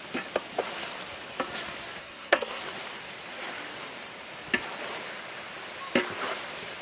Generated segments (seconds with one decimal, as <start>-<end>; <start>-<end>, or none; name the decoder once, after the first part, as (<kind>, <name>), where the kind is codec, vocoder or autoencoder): 2.0-2.6 (codec, SNAC)